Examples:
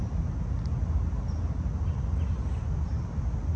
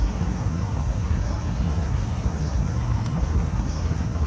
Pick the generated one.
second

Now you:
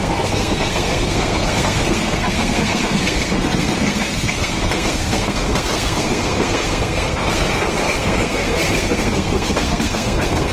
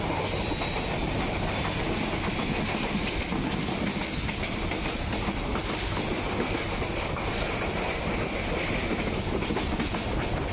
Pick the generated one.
first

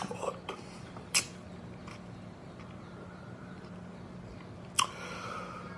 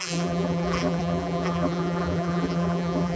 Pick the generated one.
second